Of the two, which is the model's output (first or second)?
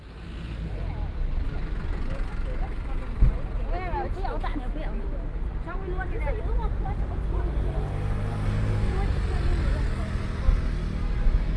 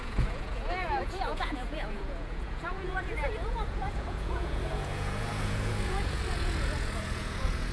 second